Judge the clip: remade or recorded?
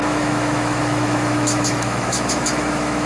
remade